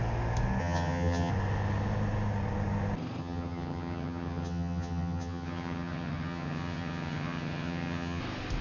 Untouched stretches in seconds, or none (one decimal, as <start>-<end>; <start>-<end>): 0.0-0.6; 1.3-3.2; 8.2-8.6